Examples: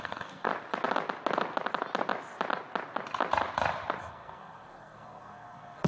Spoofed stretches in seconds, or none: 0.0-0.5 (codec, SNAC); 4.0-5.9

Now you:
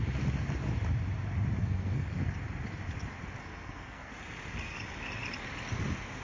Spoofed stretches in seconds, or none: 1.6-2.3 (codec, SNAC); 3.4-4.1

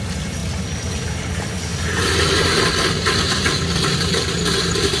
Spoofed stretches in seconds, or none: none

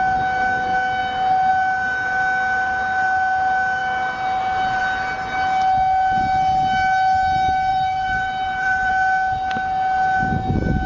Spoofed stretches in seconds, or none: 7.7-8.9 (vocoder, BigVGAN v2)

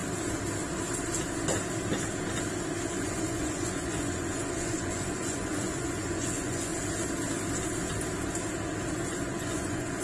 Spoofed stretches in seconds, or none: 2.9-6.7 (vocoder, Vocos); 8.9-10.0